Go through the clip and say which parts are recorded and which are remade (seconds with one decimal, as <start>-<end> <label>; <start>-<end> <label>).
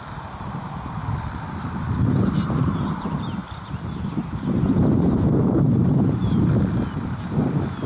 0.0-1.0 remade; 1.0-2.1 recorded; 2.1-7.9 remade